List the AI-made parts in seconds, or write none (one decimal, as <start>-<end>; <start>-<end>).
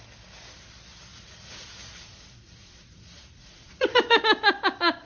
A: 1.1-4.2